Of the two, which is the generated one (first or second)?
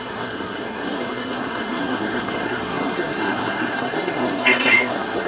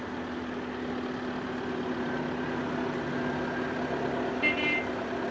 first